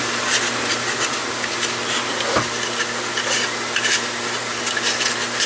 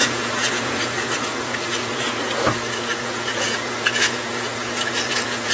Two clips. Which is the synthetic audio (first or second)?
second